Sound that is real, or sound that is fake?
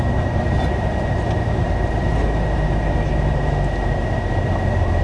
real